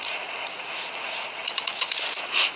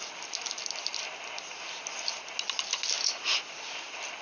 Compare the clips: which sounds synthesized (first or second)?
first